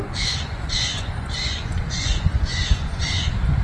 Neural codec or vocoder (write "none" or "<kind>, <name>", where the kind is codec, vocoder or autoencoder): vocoder, Vocos